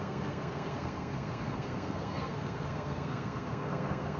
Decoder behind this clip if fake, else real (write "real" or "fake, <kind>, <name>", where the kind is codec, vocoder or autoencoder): fake, codec, SNAC